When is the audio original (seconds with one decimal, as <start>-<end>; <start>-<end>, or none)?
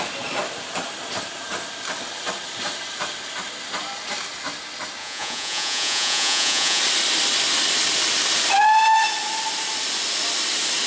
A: 0.0-5.0; 6.8-10.9